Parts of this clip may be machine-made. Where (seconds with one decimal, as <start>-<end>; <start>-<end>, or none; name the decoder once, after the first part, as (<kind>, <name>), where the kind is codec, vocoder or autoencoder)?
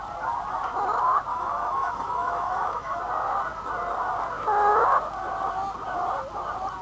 1.3-3.0 (autoencoder, DAC-VAE)